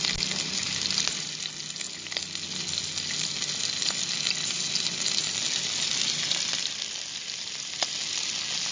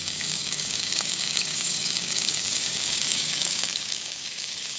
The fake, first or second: second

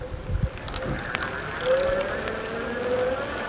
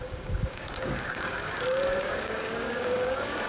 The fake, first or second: second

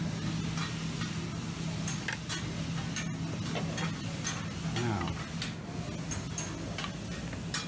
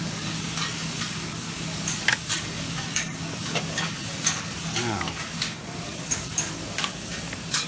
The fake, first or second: second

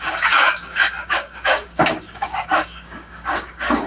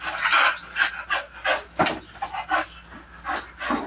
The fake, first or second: first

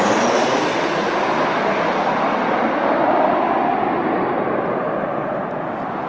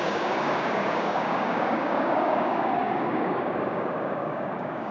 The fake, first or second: second